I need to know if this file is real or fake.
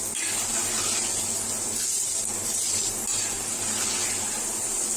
real